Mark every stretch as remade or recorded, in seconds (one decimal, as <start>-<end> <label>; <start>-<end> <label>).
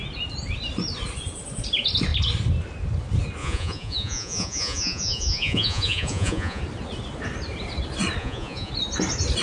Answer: 0.0-3.4 recorded; 3.4-6.6 remade; 6.6-8.2 recorded; 8.2-8.7 remade; 8.7-9.4 recorded